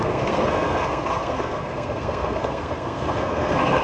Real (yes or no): no